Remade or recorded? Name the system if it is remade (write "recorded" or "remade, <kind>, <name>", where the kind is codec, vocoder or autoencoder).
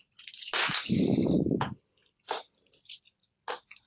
recorded